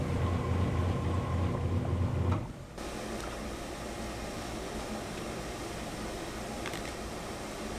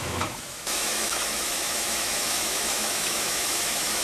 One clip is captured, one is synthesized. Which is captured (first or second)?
first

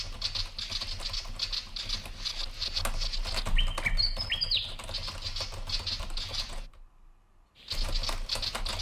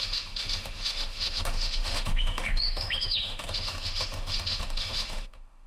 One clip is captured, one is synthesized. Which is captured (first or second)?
first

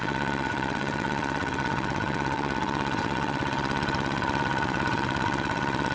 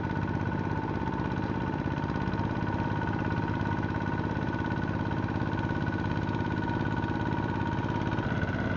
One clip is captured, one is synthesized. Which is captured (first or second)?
second